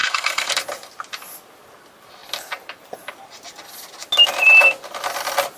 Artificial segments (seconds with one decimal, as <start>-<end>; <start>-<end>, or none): 0.0-0.5